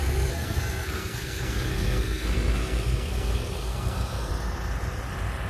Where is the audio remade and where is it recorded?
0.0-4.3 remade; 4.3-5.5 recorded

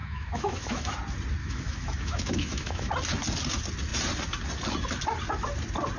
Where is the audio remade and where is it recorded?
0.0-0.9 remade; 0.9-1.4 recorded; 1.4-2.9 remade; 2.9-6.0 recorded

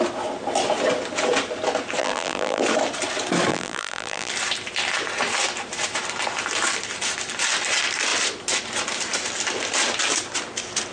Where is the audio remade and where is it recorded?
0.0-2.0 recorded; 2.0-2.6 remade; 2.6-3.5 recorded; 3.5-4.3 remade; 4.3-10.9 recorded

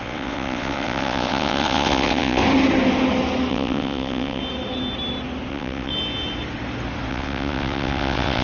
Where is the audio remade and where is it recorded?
0.0-2.4 remade; 2.4-3.5 recorded; 3.5-4.4 remade; 4.4-5.5 recorded; 5.5-5.9 remade; 5.9-7.1 recorded; 7.1-8.4 remade